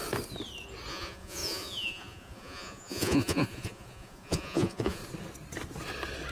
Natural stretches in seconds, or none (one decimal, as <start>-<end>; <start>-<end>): 0.0-0.9; 5.0-6.3